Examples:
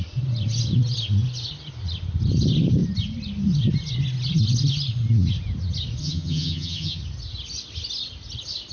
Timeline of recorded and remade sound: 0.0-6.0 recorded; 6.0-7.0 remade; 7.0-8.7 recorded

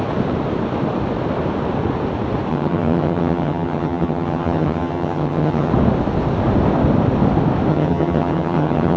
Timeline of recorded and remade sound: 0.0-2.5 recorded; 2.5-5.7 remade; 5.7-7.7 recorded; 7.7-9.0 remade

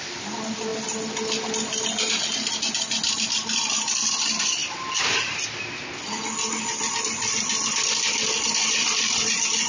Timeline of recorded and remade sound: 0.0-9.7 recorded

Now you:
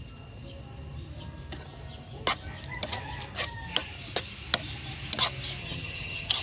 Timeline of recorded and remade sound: 0.0-5.6 recorded; 5.6-6.4 remade